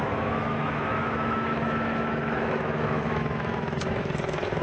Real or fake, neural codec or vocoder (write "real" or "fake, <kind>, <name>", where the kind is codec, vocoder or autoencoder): fake, autoencoder, DAC-VAE